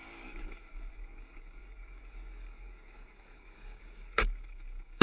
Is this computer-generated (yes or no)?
yes